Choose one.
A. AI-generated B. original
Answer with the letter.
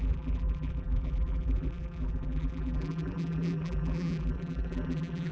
A